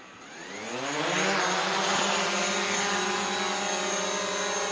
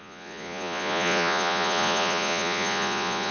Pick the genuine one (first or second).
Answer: first